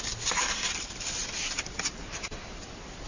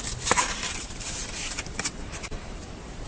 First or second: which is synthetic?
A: second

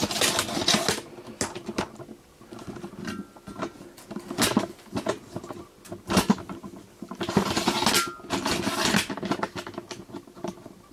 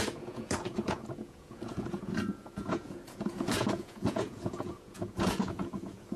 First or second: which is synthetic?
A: second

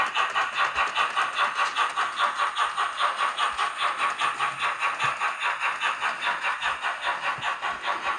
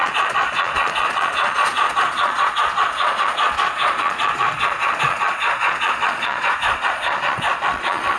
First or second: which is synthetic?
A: second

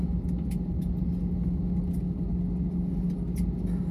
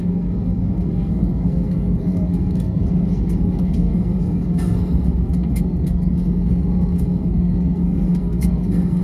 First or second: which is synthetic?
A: second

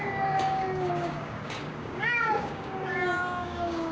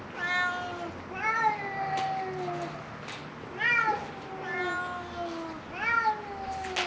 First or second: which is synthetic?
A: first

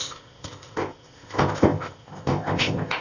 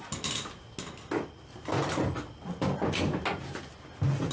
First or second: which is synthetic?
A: first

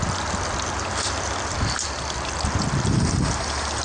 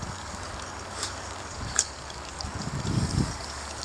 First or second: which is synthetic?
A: second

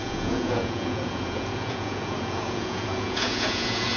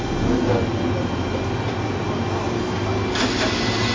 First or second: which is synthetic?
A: first